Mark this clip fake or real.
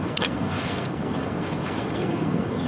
fake